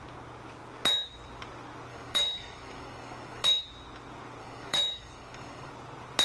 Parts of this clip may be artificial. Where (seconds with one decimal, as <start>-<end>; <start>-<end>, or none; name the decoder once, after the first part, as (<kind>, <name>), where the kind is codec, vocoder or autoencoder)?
1.9-3.6 (codec, DAC); 4.4-5.7